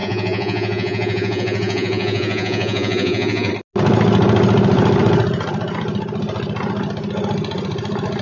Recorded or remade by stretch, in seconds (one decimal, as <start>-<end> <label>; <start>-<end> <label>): 0.0-3.5 remade; 3.5-8.2 recorded